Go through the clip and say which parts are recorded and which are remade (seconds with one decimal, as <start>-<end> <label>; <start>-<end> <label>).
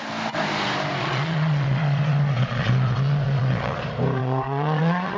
0.0-1.0 recorded; 1.0-3.8 remade; 3.8-4.2 recorded; 4.2-5.2 remade